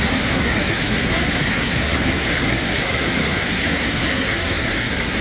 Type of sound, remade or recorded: remade